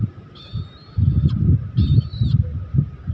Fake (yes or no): no